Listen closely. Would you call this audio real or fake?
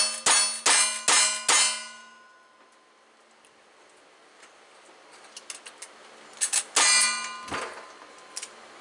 real